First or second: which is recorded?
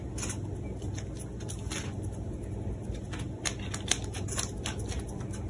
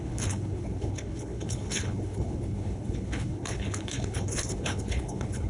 first